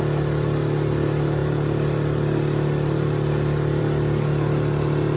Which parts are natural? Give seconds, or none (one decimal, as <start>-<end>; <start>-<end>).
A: 0.0-5.2